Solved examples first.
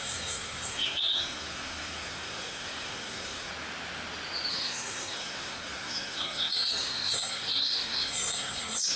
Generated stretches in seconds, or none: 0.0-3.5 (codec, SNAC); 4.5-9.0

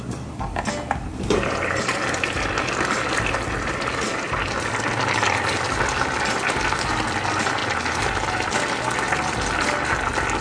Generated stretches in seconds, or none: none

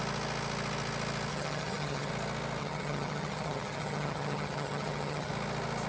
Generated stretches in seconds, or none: 1.3-2.1 (vocoder, HiFi-GAN); 2.6-5.3